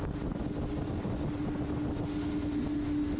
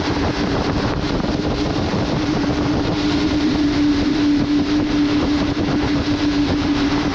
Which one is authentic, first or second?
first